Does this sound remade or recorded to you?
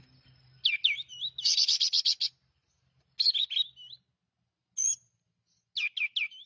recorded